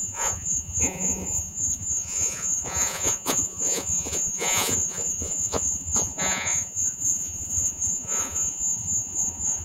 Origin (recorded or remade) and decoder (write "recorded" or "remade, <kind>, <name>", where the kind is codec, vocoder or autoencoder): remade, vocoder, Vocos